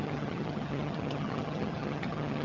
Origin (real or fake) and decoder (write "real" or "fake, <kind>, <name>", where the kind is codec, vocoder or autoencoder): fake, vocoder, HiFi-GAN